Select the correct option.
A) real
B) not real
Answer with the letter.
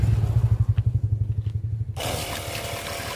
A